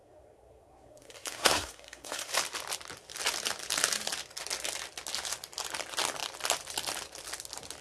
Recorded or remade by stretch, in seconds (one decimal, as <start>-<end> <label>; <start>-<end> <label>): 0.0-2.3 remade; 2.3-7.8 recorded

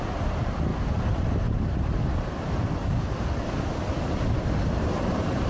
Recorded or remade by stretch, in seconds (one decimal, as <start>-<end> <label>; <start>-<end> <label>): 0.0-5.5 recorded

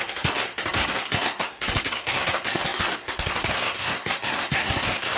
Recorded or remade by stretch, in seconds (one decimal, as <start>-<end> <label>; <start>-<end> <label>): 0.0-5.2 remade

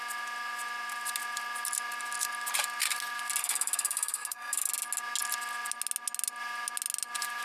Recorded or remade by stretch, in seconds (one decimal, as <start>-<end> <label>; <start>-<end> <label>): 0.0-3.4 recorded; 3.4-4.7 remade; 4.7-7.4 recorded

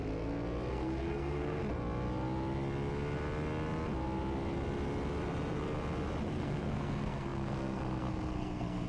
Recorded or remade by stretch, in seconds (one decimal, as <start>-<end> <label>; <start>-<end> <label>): 0.0-0.7 recorded; 0.7-1.6 remade; 1.6-6.3 recorded; 6.3-8.9 remade

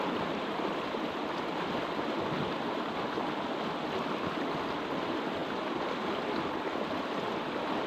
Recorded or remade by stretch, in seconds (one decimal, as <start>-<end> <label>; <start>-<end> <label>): 0.0-7.9 recorded